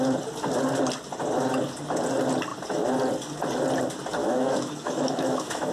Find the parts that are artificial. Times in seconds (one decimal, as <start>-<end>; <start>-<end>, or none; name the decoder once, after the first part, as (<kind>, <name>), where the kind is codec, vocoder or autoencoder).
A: 4.2-5.7 (autoencoder, DAC-VAE)